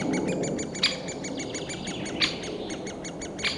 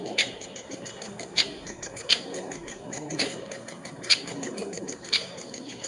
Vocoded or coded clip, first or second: second